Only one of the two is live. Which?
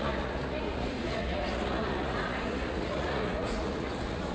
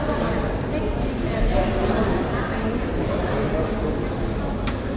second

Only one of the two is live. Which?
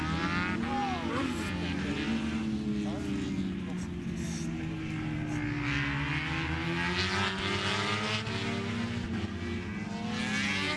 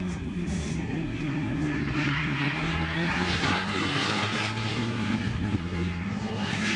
first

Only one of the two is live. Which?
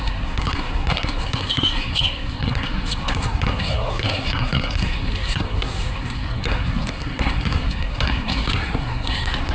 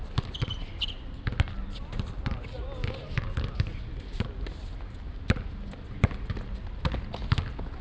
second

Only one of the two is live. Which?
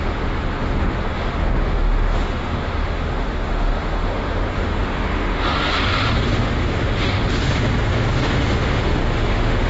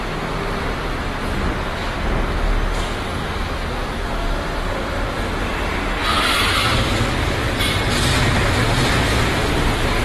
second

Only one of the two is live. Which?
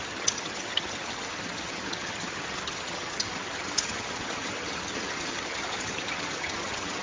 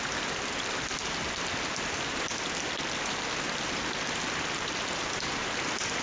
second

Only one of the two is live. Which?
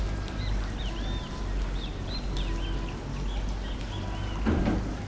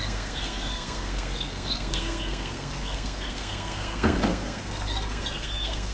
first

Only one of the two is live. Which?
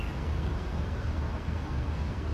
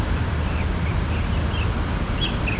second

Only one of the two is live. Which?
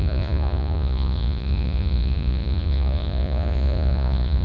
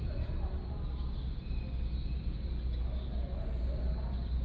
second